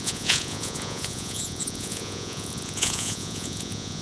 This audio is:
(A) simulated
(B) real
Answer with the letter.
A